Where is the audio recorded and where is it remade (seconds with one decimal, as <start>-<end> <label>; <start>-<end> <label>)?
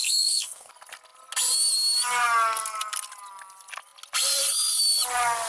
0.0-0.7 remade; 0.7-5.5 recorded